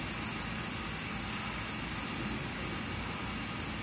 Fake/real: real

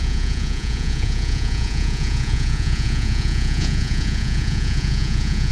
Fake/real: fake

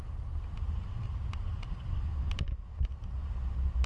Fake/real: real